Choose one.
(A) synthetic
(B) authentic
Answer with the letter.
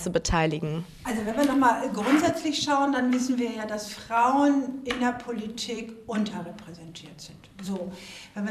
A